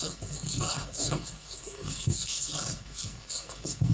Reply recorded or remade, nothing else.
remade